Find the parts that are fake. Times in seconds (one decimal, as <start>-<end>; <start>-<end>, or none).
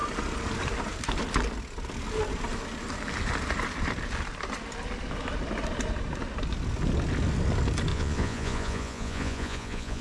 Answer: 7.9-10.0